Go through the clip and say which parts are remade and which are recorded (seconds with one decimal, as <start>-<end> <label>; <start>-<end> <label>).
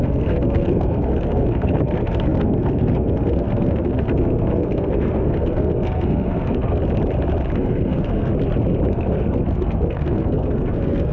0.0-6.8 remade; 6.8-7.6 recorded; 7.6-8.3 remade; 8.3-8.9 recorded; 8.9-11.1 remade